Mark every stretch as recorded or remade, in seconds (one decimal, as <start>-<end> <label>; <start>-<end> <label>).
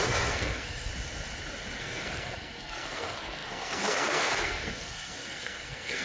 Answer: 0.0-0.9 remade; 0.9-1.8 recorded; 1.8-6.0 remade